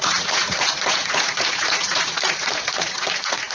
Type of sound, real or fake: fake